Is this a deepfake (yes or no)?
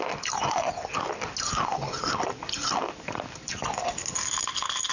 no